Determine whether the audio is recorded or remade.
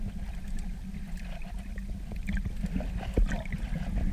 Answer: recorded